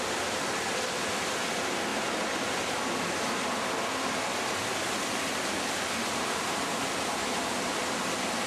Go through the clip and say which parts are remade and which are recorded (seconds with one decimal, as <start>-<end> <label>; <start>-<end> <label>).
0.0-8.5 recorded